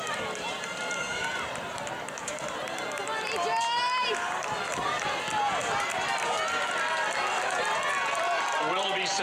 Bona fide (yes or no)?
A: yes